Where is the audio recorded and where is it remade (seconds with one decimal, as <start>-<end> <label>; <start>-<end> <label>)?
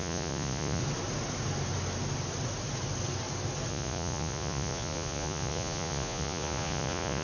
0.0-0.8 remade; 0.8-3.7 recorded; 3.7-7.2 remade